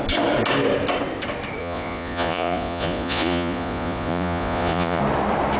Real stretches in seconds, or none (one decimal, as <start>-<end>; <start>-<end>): 0.0-1.6; 5.0-5.6